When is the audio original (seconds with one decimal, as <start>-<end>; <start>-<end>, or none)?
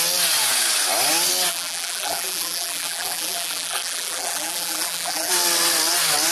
0.0-1.5; 5.3-6.3